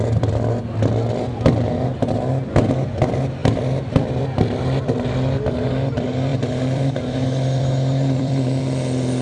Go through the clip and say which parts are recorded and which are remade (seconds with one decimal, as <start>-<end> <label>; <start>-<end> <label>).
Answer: 0.0-3.4 recorded; 3.4-4.2 remade; 4.2-6.3 recorded; 6.3-8.6 remade; 8.6-9.2 recorded